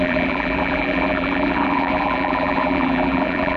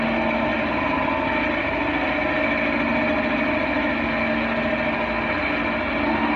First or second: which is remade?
first